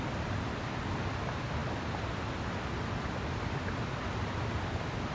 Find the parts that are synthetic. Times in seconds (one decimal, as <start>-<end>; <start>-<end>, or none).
none

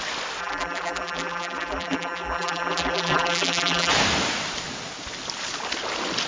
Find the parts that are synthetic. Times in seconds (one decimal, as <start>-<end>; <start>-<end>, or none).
0.4-3.9

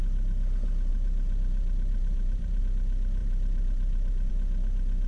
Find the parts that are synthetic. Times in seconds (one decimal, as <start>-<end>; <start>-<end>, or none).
0.9-2.6; 3.2-4.3

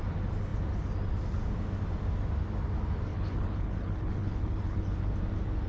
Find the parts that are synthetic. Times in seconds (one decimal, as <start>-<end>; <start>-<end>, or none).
3.1-5.1

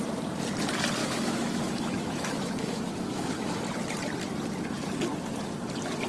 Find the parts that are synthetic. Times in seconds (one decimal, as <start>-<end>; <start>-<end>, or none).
1.0-3.6

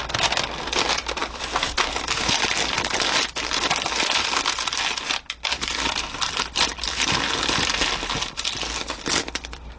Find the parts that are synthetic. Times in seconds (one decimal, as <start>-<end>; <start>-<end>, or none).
none

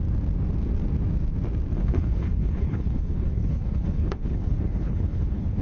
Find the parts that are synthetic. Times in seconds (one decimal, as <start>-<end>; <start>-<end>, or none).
1.8-5.6